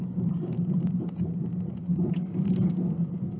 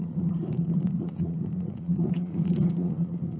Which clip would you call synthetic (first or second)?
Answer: second